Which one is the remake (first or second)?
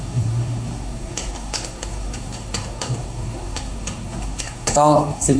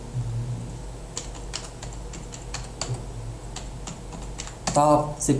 first